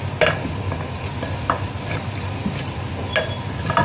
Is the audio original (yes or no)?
yes